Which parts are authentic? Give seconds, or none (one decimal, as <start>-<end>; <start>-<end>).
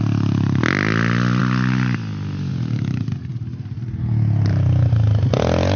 0.0-5.8